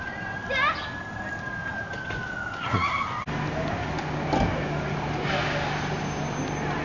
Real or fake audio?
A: real